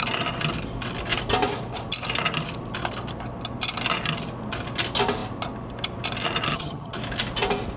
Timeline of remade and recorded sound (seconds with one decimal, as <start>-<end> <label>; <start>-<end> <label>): 0.0-6.5 recorded; 6.5-7.0 remade; 7.0-7.8 recorded